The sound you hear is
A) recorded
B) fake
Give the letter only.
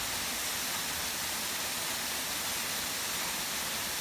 A